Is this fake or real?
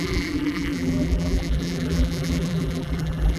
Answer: fake